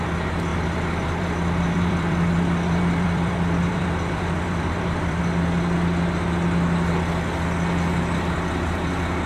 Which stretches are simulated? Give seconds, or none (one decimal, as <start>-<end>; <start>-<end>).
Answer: 0.5-5.2